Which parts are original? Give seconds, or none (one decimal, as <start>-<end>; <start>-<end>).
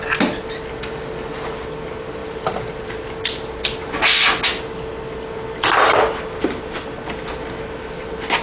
0.0-2.2; 2.9-8.4